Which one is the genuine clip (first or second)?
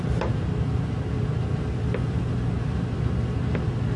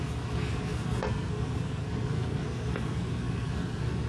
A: first